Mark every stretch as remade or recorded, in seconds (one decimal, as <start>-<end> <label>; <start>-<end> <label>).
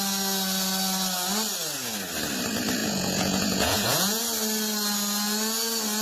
0.0-2.8 recorded; 2.8-4.2 remade; 4.2-6.0 recorded